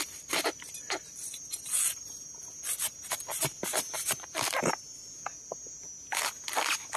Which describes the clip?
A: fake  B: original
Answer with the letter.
B